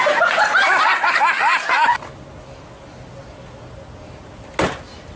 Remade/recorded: recorded